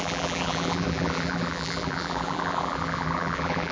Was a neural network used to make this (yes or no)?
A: yes